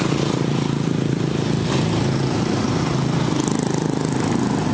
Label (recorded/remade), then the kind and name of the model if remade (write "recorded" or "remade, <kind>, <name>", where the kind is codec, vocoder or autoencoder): recorded